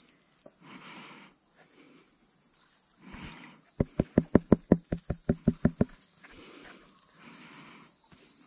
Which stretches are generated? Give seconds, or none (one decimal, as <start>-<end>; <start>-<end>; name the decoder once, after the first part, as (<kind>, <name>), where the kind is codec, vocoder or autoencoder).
none